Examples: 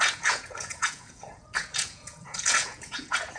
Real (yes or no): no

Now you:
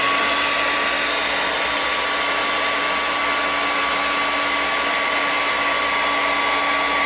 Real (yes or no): yes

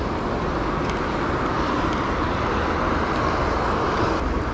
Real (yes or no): yes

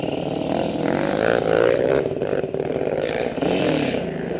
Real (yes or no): no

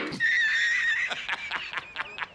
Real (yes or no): yes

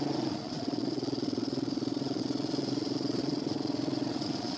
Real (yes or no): no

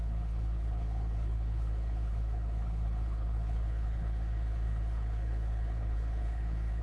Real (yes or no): no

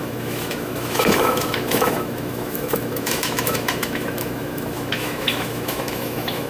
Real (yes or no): no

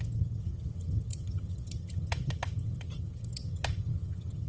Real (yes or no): no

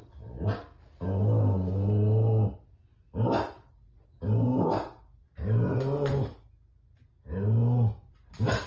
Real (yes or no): yes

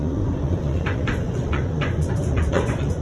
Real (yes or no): no